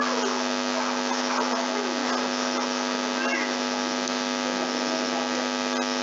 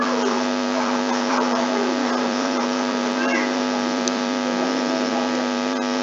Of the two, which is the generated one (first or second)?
second